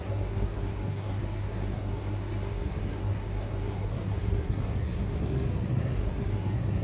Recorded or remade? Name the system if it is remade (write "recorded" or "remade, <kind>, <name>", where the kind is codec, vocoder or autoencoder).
remade, codec, SNAC